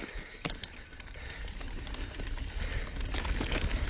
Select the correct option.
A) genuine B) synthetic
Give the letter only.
A